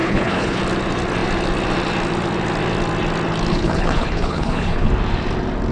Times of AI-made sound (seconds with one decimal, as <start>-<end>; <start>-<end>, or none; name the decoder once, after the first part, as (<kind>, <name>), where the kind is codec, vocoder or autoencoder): 0.0-0.6 (codec, HILCodec); 3.5-4.9